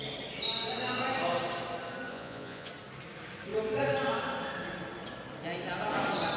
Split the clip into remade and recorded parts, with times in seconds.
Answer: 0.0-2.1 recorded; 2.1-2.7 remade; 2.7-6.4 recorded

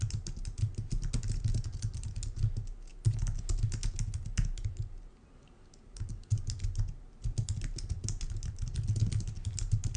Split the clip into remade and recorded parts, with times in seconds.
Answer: 0.0-10.0 recorded

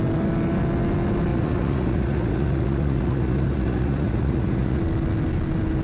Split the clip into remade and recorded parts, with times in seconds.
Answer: 0.0-1.3 recorded; 1.3-4.8 remade; 4.8-5.8 recorded

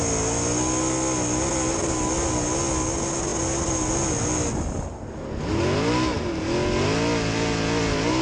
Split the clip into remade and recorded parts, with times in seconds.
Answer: 0.0-8.2 recorded

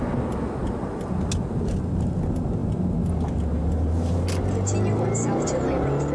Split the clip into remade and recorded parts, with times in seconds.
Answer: 0.0-6.1 recorded